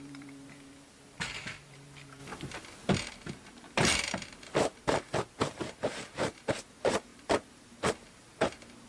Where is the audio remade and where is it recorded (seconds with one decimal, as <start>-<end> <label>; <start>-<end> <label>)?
0.0-2.2 remade; 2.2-2.9 recorded; 2.9-8.9 remade